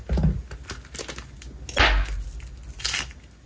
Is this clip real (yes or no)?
yes